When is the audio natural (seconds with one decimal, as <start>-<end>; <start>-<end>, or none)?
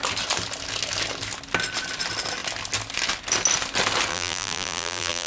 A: 0.0-4.1